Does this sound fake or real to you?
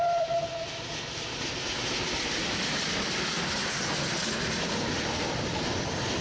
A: real